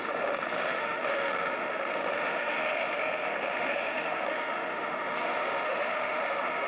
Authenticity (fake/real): fake